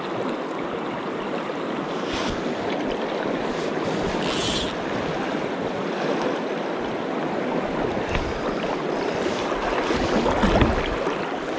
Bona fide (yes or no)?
yes